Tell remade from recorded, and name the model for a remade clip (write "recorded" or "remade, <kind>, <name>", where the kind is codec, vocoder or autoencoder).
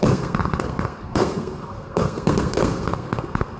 remade, codec, SNAC